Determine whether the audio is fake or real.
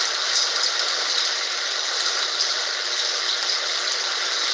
real